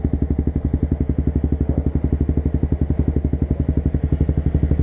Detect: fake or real real